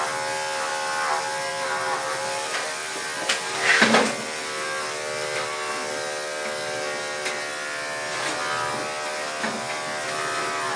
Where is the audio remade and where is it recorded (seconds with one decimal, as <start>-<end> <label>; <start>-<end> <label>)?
0.0-10.8 recorded